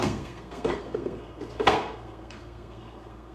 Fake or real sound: fake